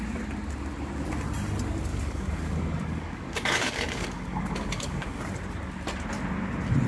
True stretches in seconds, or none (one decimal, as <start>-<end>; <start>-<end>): 0.0-1.9; 5.2-6.9